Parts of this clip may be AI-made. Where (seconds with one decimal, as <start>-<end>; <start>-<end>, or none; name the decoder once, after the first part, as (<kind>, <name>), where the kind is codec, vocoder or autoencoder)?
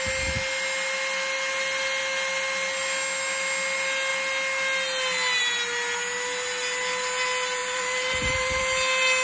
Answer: 7.6-8.6 (vocoder, BigVGAN v2)